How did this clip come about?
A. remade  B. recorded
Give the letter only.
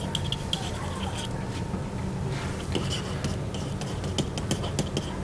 B